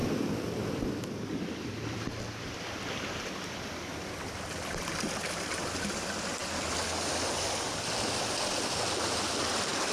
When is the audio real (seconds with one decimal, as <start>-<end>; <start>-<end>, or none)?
4.8-9.9